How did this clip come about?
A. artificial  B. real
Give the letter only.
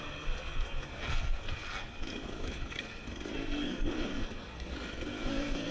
A